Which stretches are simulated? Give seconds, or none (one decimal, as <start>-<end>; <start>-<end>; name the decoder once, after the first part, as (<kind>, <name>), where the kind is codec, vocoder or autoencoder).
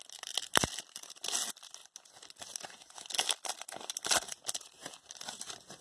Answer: none